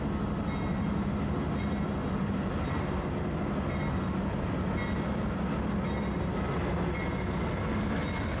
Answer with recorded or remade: recorded